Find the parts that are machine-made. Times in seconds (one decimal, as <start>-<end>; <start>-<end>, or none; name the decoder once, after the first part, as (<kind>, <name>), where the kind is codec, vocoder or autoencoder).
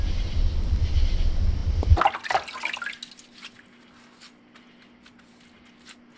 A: none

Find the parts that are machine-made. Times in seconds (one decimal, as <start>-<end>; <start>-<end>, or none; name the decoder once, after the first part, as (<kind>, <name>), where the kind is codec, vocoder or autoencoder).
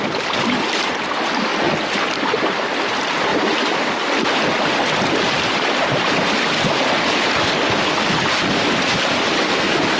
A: 0.0-1.5 (vocoder, BigVGAN v2); 2.0-3.3; 4.6-10.0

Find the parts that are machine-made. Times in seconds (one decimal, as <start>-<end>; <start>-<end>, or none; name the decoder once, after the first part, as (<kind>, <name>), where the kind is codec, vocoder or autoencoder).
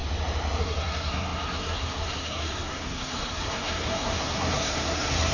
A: 0.6-5.3 (codec, SNAC)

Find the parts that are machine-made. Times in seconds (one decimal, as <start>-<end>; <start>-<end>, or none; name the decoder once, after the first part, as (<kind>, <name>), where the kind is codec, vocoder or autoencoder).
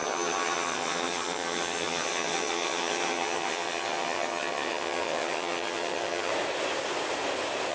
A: 0.0-6.3 (vocoder, HiFi-GAN)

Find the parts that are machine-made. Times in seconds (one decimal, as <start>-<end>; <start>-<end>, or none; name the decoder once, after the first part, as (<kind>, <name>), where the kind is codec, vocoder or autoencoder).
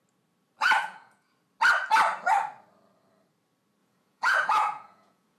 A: 0.8-1.3 (vocoder, Vocos); 3.8-5.4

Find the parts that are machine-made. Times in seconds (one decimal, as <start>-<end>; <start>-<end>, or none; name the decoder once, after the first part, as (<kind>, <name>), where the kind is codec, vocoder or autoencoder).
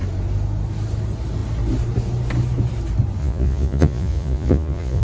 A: 3.2-5.0 (vocoder, Vocos)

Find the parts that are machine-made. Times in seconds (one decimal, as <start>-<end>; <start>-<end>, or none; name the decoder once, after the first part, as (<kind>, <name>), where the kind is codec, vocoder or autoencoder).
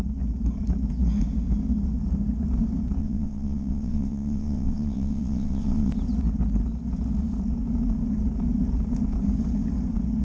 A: 3.0-5.9 (vocoder, WaveNeXt)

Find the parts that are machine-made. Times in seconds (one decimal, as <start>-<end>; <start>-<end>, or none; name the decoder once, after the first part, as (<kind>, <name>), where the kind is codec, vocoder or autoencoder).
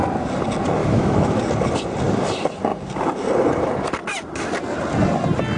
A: 0.8-1.4 (autoencoder, DAC-VAE)